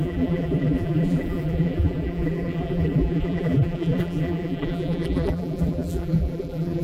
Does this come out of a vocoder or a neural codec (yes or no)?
yes